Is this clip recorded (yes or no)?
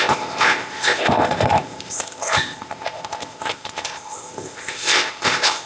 no